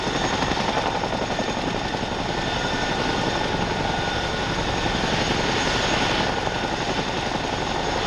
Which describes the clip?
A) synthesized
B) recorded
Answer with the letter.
B